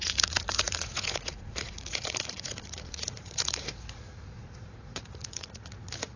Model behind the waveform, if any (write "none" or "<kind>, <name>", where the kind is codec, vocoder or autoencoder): vocoder, Vocos